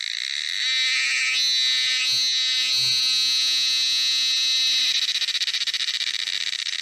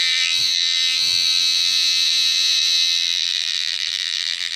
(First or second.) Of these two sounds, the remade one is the second